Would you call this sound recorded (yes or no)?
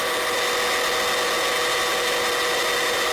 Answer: yes